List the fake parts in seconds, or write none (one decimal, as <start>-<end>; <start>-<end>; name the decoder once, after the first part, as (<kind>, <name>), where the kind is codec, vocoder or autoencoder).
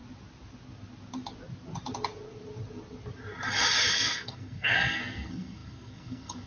3.9-6.5 (codec, SNAC)